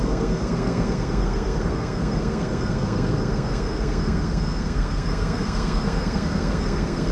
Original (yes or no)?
no